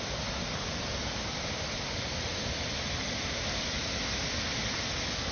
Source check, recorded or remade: recorded